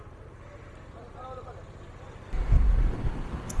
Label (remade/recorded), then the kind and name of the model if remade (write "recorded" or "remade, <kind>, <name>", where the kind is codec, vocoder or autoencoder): recorded